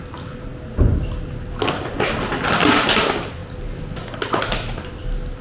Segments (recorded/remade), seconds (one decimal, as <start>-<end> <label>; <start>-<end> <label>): 0.0-5.4 recorded